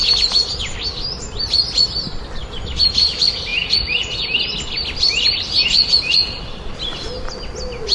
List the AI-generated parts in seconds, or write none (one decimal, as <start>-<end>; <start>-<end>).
none